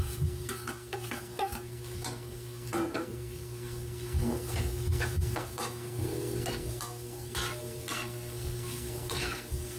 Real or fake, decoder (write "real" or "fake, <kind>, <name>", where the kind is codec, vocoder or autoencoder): fake, codec, SNAC